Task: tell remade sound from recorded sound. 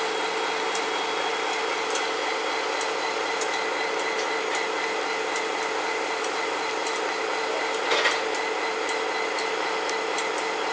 recorded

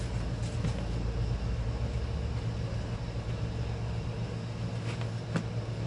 recorded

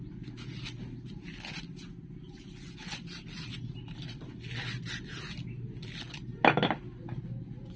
recorded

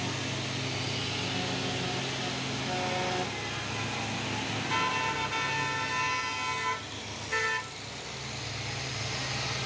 recorded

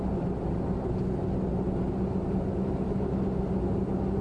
recorded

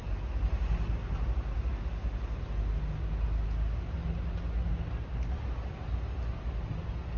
recorded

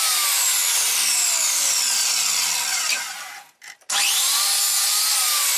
recorded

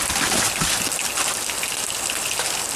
recorded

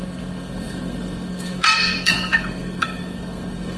remade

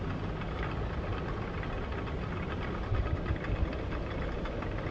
recorded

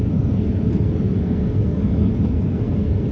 remade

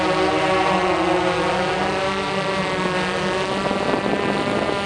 recorded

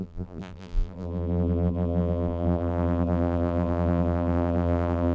remade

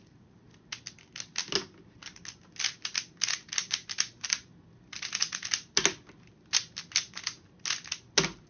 recorded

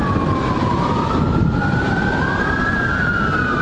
recorded